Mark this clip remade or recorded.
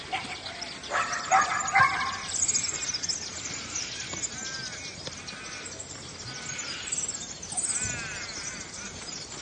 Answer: recorded